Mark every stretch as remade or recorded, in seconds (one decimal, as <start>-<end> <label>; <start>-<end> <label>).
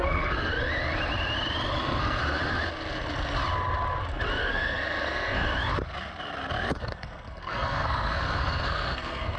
0.0-0.5 remade; 0.5-1.8 recorded; 1.8-2.2 remade; 2.2-4.4 recorded; 4.4-5.5 remade; 5.5-6.8 recorded; 6.8-9.4 remade